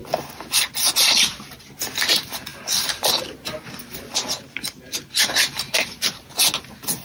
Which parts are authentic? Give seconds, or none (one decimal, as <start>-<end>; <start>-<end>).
0.0-7.0